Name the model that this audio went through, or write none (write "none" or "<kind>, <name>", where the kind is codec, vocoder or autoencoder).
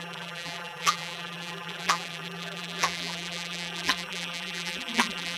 vocoder, BigVGAN v2